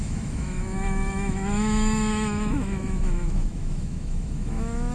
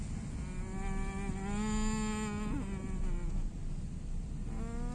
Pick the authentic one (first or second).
second